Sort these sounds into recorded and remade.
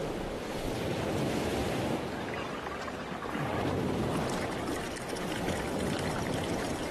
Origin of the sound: recorded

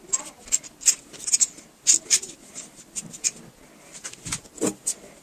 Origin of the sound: recorded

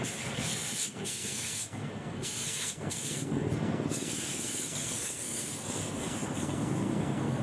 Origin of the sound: remade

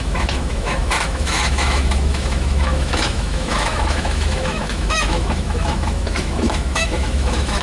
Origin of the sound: remade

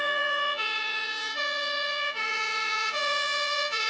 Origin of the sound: remade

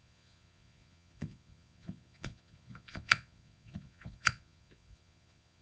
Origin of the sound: remade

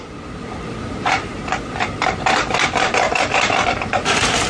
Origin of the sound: recorded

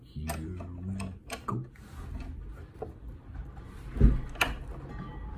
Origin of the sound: recorded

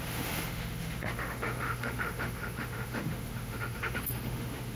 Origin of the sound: remade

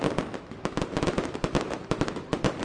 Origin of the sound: recorded